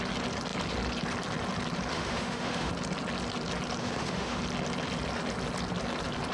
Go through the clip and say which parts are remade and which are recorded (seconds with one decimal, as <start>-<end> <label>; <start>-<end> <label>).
0.0-1.9 recorded; 1.9-2.7 remade; 2.7-3.8 recorded; 3.8-4.4 remade; 4.4-6.3 recorded